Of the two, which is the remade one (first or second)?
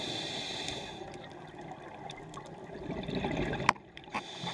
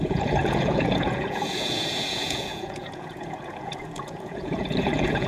second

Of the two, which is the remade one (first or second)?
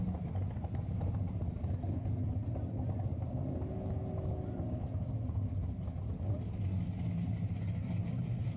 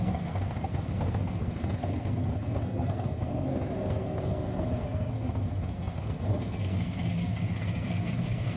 second